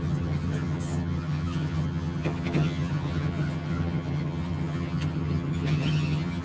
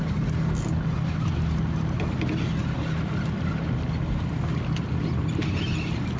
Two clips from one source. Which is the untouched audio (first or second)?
second